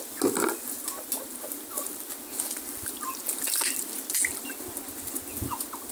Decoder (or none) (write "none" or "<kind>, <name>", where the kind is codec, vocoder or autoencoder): none